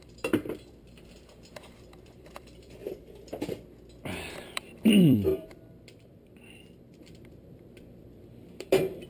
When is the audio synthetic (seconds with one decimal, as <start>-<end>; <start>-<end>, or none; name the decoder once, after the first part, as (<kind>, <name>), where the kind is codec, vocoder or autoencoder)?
0.0-2.8 (vocoder, BigVGAN v2); 4.2-9.1